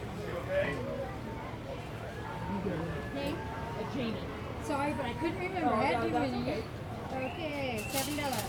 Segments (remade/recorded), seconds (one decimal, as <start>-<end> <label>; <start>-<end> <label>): 0.0-8.5 recorded